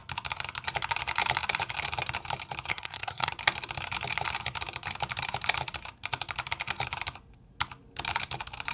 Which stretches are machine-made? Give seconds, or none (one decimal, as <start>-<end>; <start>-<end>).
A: 2.7-3.3